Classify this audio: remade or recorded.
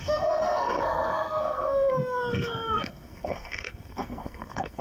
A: remade